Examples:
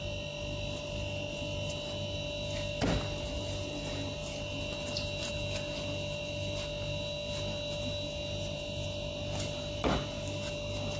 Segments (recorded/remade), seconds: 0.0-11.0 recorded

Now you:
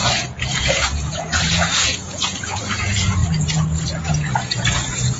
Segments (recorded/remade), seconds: 0.0-0.6 recorded; 0.6-3.2 remade; 3.2-4.1 recorded; 4.1-5.2 remade

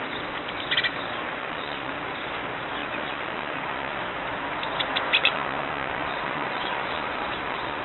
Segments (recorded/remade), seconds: 0.0-1.3 recorded; 1.3-1.9 remade; 1.9-2.8 recorded; 2.8-4.0 remade; 4.0-5.2 recorded; 5.2-7.8 remade

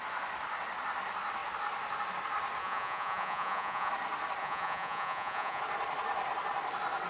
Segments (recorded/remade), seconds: 0.0-2.6 recorded; 2.6-3.9 remade; 3.9-4.4 recorded; 4.4-5.6 remade; 5.6-7.1 recorded

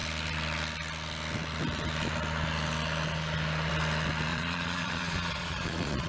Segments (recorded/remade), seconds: 0.0-4.3 recorded; 4.3-6.1 remade

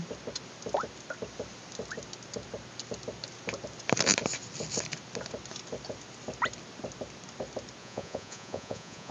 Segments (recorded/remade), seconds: 0.0-7.8 recorded; 7.8-9.1 remade

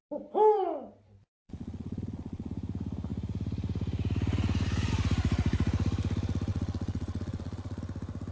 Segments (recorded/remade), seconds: 0.0-1.2 recorded; 1.2-2.5 remade; 2.5-6.5 recorded; 6.5-7.8 remade; 7.8-8.3 recorded